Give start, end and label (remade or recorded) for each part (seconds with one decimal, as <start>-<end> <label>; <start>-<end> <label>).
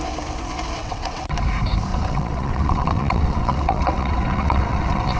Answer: 0.0-0.8 recorded; 0.8-1.4 remade; 1.4-1.9 recorded; 1.9-5.2 remade